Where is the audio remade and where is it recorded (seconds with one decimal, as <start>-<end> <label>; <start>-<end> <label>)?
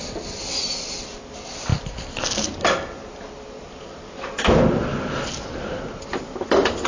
0.0-6.9 recorded